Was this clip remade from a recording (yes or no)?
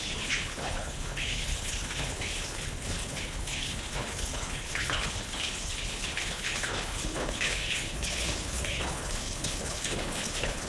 yes